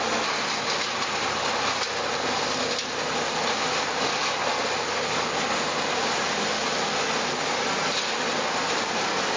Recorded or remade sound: recorded